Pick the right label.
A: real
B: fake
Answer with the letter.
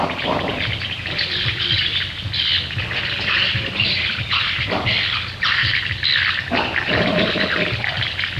A